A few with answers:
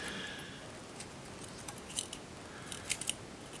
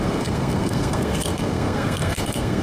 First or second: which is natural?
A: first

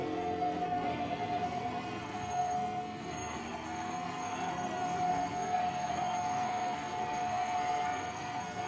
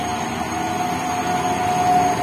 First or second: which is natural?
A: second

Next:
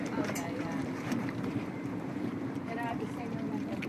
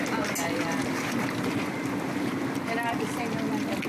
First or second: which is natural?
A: second